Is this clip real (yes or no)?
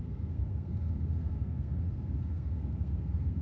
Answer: no